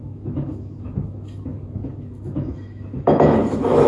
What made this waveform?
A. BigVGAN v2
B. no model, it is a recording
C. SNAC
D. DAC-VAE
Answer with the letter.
D